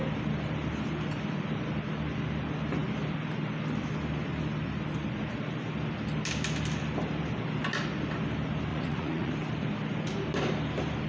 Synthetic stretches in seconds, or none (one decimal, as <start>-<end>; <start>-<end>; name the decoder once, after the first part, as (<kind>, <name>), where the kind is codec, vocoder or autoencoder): 8.7-9.3 (vocoder, Vocos)